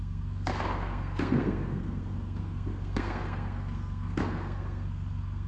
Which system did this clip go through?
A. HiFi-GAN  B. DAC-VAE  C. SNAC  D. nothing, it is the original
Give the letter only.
C